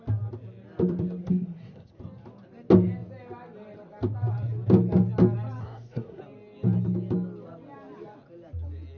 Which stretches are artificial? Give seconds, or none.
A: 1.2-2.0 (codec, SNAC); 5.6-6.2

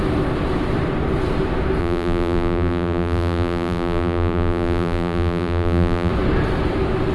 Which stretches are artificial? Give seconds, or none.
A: 1.8-6.1 (vocoder, BigVGAN v2)

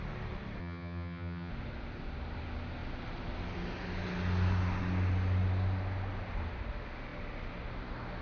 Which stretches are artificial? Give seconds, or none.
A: 0.6-1.5 (vocoder, HiFi-GAN)

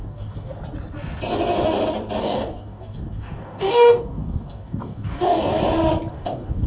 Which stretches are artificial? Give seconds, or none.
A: 0.0-0.5 (codec, DAC); 2.2-5.6; 6.1-6.7

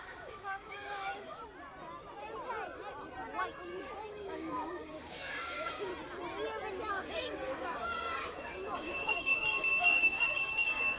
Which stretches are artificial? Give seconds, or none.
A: 0.0-1.4 (codec, DAC); 4.1-5.9; 6.9-11.0

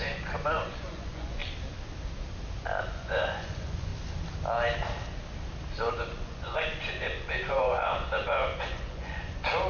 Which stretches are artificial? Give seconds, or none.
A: 0.0-1.4 (vocoder, Vocos); 2.8-3.9; 5.9-9.7

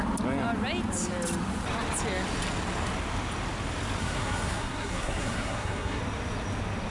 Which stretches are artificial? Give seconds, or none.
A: 4.0-6.0 (codec, SNAC)

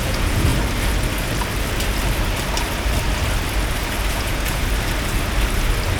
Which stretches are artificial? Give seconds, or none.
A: 0.0-0.5 (vocoder, Vocos); 4.1-4.6